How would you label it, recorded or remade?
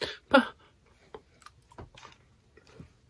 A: recorded